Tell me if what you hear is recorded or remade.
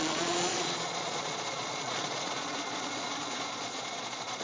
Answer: remade